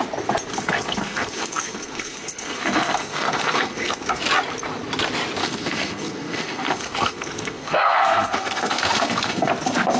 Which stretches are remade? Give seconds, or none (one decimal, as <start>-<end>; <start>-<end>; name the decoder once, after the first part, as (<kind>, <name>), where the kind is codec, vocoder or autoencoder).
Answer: 0.5-4.2 (codec, SNAC); 5.4-9.5